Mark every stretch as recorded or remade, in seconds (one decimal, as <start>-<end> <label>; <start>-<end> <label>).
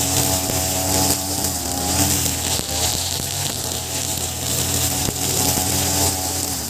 0.0-6.7 recorded